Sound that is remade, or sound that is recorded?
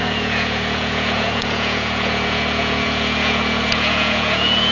remade